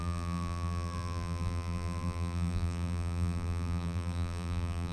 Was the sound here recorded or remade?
remade